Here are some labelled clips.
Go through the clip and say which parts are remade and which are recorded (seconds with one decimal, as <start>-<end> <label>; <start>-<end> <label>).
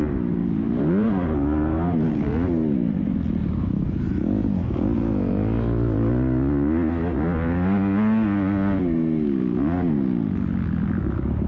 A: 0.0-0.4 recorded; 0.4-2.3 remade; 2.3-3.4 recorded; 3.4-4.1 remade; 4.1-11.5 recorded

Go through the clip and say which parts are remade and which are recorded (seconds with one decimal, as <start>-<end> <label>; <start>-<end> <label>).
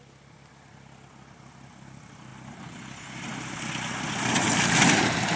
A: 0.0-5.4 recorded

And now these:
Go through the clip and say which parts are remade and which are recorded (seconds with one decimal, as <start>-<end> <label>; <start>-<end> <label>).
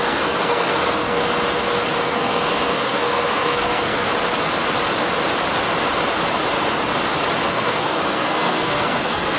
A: 0.0-1.2 remade; 1.2-2.0 recorded; 2.0-4.1 remade; 4.1-7.5 recorded; 7.5-9.4 remade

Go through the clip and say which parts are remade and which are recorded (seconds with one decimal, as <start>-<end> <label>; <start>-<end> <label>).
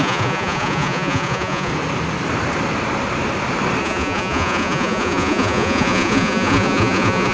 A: 0.0-1.7 remade; 1.7-3.8 recorded; 3.8-7.3 remade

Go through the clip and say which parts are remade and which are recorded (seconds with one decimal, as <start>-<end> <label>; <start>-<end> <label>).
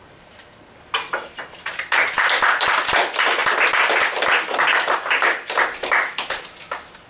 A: 0.0-7.1 remade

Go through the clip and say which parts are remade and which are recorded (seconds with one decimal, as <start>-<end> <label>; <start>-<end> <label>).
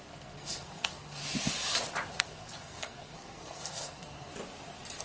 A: 0.0-1.2 remade; 1.2-2.1 recorded; 2.1-4.3 remade; 4.3-5.0 recorded